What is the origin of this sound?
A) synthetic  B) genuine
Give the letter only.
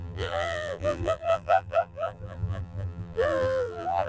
A